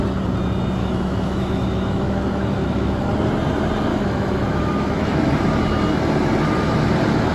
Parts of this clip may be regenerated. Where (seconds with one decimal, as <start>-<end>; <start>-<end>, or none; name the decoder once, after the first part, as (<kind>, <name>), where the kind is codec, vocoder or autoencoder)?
0.8-3.1 (autoencoder, DAC-VAE); 3.9-5.3